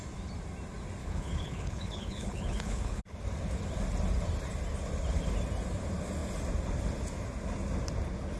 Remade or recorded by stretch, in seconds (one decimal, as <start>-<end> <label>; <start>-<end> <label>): 0.0-1.0 recorded; 1.0-3.0 remade; 3.0-8.4 recorded